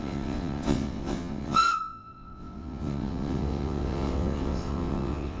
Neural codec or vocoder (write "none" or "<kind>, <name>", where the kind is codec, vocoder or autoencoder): vocoder, WaveNeXt